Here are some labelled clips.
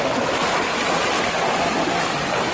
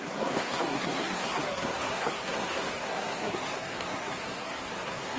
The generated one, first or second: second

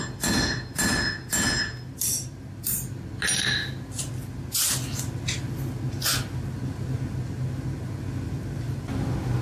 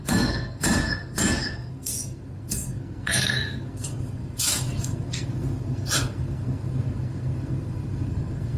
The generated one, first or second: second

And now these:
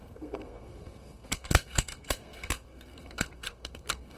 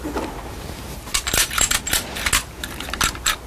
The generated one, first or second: first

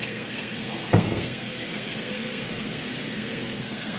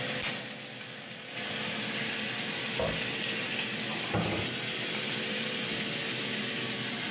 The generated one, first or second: first